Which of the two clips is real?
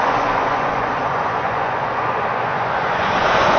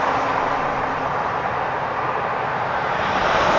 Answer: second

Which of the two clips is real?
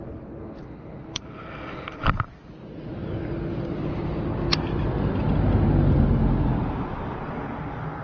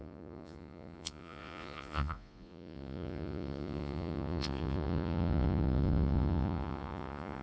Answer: first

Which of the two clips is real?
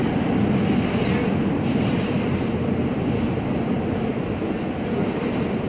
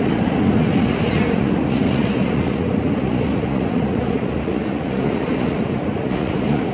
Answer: first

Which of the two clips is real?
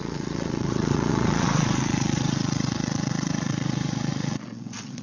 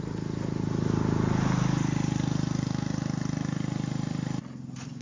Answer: second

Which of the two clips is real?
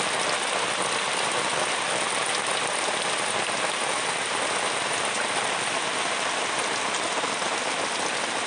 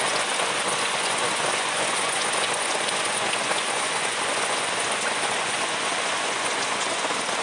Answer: first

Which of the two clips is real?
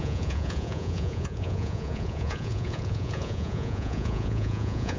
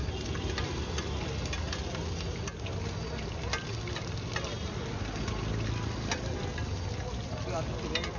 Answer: second